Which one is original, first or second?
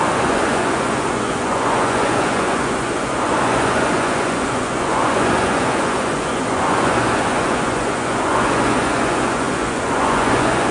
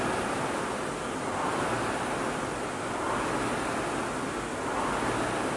second